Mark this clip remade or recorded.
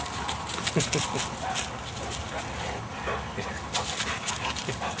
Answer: recorded